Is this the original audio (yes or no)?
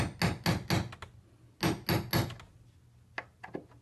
yes